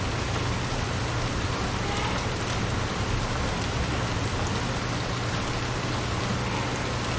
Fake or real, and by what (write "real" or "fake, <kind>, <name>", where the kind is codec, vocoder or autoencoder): real